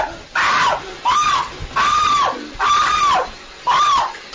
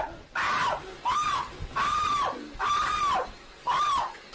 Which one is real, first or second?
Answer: second